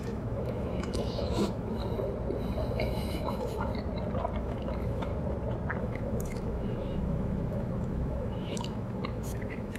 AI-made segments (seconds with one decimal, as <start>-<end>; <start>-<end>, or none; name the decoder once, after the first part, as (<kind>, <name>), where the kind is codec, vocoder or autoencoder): 0.0-1.8 (autoencoder, DAC-VAE); 2.7-3.7; 4.4-5.1; 5.8-9.8